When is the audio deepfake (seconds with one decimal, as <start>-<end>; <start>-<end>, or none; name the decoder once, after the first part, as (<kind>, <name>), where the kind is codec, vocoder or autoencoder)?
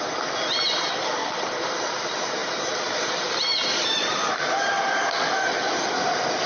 1.2-1.7 (vocoder, BigVGAN v2); 2.4-5.9